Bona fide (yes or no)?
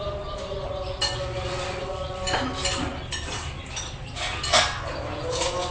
yes